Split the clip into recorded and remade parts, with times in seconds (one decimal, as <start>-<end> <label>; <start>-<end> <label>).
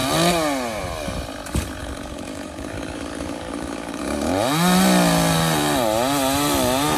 0.0-1.8 recorded; 1.8-4.0 remade; 4.0-7.0 recorded